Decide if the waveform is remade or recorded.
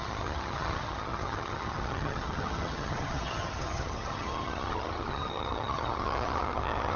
remade